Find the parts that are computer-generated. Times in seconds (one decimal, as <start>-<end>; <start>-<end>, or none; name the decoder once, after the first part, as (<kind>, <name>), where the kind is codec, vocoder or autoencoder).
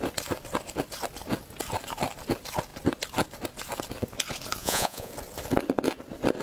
4.6-5.1 (vocoder, Vocos)